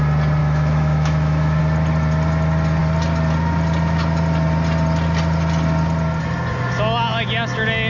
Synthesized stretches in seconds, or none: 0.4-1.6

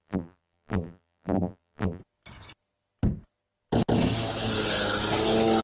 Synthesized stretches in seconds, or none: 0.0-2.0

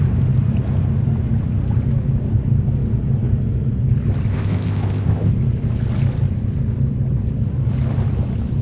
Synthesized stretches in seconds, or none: 4.3-5.3

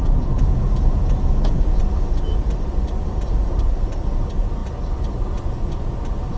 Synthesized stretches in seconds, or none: 0.0-1.8